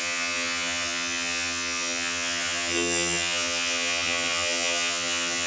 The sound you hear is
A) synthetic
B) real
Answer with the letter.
A